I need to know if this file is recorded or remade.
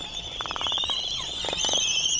remade